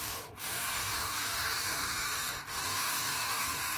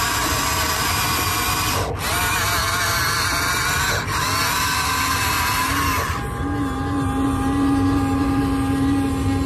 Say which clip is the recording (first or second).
second